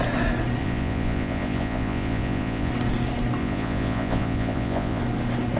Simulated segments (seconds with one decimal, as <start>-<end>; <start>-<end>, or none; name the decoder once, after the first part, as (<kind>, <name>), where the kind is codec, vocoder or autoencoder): 0.6-2.7 (vocoder, Vocos); 3.4-5.0